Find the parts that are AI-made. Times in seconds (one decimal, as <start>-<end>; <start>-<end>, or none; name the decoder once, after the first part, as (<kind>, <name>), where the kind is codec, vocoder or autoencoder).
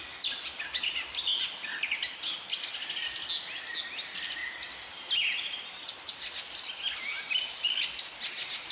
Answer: none